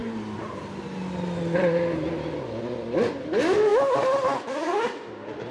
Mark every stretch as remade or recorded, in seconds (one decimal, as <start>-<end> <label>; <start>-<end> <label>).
0.0-0.5 remade; 0.5-5.5 recorded